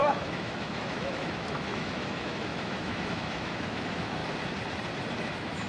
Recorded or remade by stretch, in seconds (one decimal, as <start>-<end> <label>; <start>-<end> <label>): 0.0-4.2 remade; 4.2-5.3 recorded; 5.3-5.7 remade

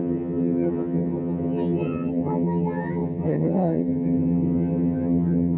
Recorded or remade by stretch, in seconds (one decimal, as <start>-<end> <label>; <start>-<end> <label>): 0.0-5.6 remade

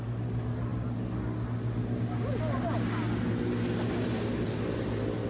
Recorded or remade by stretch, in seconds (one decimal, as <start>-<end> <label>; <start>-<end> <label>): 0.0-5.3 recorded

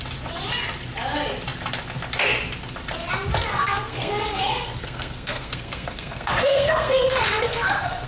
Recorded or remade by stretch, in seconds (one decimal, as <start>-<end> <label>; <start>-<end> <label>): 0.0-3.5 recorded; 3.5-8.1 remade